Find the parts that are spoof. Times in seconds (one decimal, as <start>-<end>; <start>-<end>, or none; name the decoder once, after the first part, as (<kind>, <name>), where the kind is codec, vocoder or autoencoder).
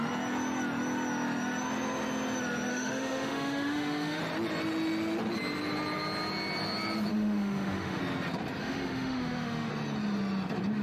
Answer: 2.7-4.2 (autoencoder, DAC-VAE); 7.1-8.0; 8.6-9.7